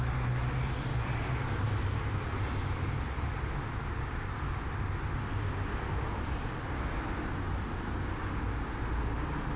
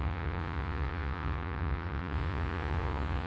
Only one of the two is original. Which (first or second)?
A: first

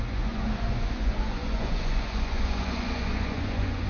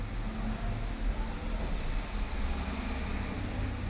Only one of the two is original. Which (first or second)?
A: second